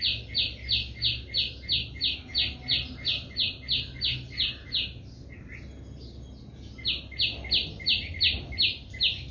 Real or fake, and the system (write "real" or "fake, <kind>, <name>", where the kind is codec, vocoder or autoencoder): real